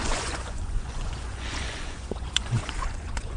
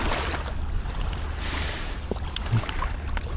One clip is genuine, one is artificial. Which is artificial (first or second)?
first